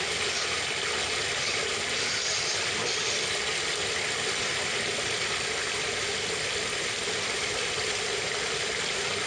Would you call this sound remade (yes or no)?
no